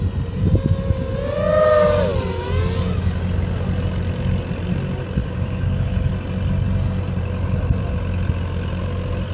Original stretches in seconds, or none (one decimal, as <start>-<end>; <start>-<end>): 0.0-5.2; 6.1-9.3

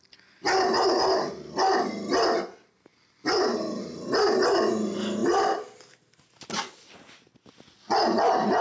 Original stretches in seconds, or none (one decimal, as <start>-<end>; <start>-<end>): 0.0-2.9; 3.8-5.2; 6.5-8.6

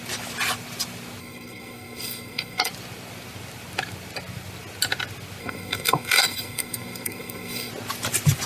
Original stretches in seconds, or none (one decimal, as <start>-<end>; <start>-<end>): 0.0-1.2; 2.7-5.4; 7.7-8.5